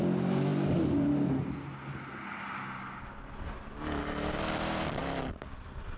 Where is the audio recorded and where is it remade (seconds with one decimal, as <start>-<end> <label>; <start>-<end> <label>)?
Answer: 0.0-0.5 remade; 0.5-4.0 recorded; 4.0-5.0 remade; 5.0-6.0 recorded